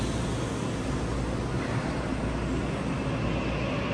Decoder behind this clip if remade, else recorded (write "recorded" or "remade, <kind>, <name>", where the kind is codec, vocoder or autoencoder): recorded